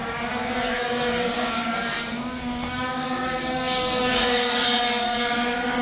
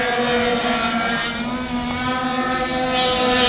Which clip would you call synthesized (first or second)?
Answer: first